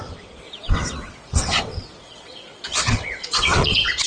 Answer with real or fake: fake